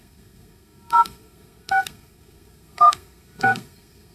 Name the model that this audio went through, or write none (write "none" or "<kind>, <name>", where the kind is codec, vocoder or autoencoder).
codec, SNAC